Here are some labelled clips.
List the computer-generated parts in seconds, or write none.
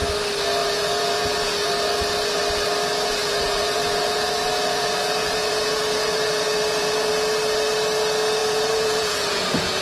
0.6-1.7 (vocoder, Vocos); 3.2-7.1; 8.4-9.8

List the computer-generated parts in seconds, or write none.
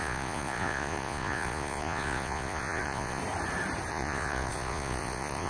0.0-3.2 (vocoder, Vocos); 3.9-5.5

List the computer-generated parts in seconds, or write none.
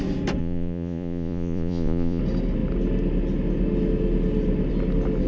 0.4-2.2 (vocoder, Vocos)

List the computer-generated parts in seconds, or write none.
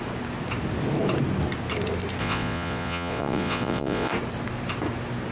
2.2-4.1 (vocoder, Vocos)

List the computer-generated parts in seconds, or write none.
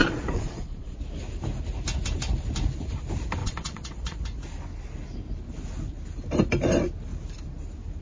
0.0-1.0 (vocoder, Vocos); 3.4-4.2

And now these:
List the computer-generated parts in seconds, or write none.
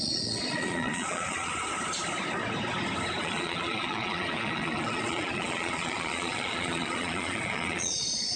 0.0-1.5 (vocoder, Vocos); 3.2-8.4